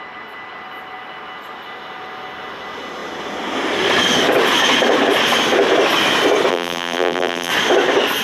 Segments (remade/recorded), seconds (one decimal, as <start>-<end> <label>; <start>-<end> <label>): 0.0-6.5 recorded; 6.5-7.5 remade; 7.5-8.2 recorded